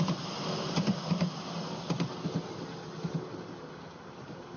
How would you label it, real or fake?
real